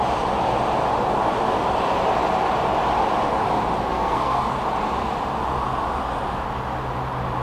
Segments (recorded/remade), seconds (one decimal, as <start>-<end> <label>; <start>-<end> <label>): 0.0-3.9 recorded; 3.9-4.6 remade; 4.6-7.4 recorded